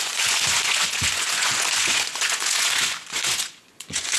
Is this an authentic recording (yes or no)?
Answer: no